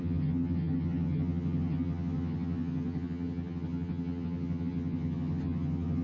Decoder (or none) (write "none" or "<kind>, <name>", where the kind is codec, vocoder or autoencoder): vocoder, HiFi-GAN